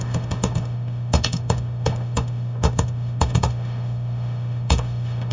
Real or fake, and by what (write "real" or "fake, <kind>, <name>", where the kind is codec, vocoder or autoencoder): fake, autoencoder, DAC-VAE